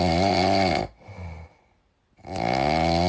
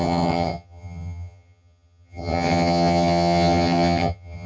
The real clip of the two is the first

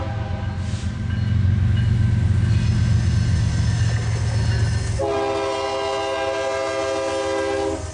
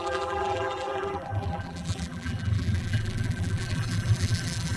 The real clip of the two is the first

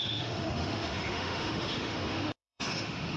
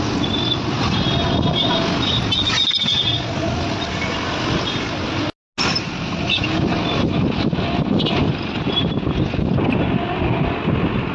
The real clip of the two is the second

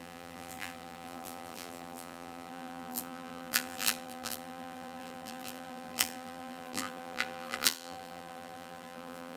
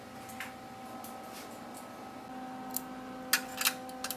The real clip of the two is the second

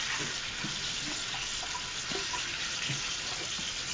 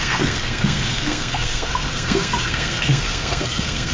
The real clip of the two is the first